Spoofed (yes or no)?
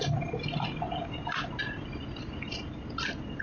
no